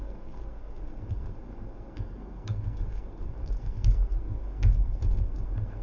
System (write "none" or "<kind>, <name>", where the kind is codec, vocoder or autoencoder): codec, SNAC